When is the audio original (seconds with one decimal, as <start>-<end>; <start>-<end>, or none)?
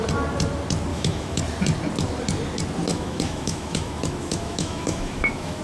0.0-0.9; 1.4-2.9